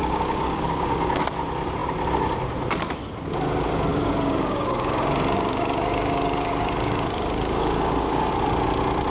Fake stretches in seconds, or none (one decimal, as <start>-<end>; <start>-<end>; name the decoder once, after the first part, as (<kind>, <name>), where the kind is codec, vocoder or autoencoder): 0.0-1.2 (codec, DAC); 3.9-8.3